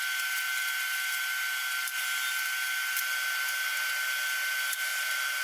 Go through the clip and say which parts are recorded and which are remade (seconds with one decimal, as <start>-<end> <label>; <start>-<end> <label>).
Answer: 0.0-4.9 recorded; 4.9-5.4 remade